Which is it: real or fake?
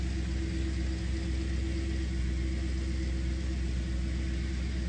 real